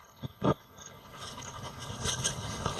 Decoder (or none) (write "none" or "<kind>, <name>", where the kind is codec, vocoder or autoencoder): codec, HILCodec